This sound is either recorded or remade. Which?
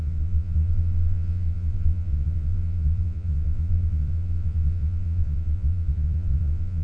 remade